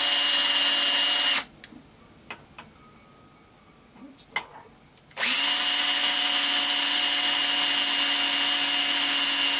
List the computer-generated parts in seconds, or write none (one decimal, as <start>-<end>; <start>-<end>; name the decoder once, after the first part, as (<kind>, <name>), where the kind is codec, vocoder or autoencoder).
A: none